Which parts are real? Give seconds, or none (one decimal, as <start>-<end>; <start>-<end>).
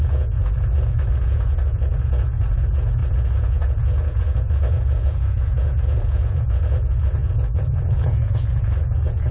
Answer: none